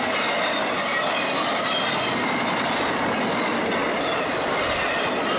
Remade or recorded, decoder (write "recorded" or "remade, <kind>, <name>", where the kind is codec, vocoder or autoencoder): recorded